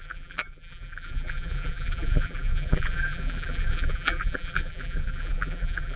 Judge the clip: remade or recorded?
remade